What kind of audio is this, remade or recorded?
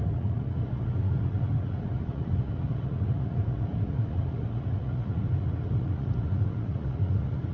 remade